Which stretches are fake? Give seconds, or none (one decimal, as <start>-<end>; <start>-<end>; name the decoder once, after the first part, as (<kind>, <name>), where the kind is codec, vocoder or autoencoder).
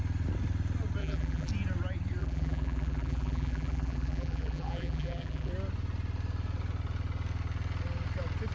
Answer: 1.0-1.5 (vocoder, BigVGAN v2); 2.2-5.5